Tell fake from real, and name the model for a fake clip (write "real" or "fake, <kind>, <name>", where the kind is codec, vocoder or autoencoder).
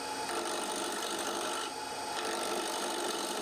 real